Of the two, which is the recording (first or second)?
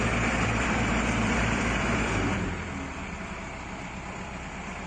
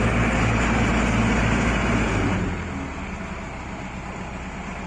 second